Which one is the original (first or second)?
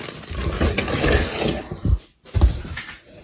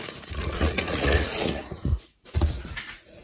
first